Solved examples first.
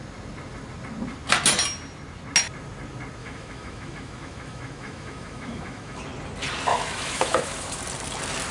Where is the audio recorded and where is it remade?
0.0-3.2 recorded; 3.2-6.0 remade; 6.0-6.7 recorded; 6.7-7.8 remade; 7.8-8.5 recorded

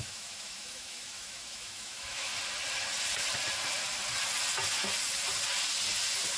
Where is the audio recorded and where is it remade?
0.0-2.3 remade; 2.3-6.4 recorded